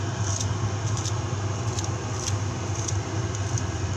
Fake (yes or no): yes